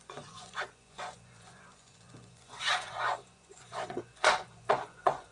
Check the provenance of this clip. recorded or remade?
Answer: remade